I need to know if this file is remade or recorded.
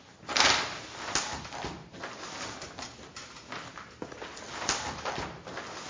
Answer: recorded